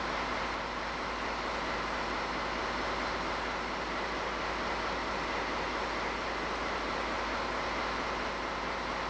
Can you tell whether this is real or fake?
real